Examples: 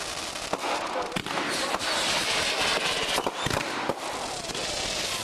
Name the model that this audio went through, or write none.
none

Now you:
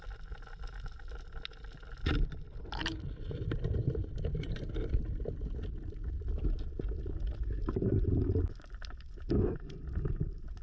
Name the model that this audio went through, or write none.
none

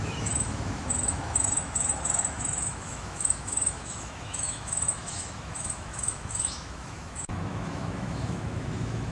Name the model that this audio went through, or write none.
autoencoder, DAC-VAE